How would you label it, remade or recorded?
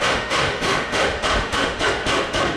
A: remade